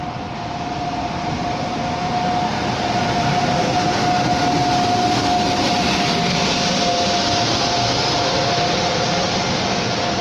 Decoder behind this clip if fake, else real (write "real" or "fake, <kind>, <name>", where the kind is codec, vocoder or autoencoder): real